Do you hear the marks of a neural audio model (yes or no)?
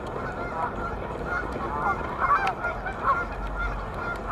no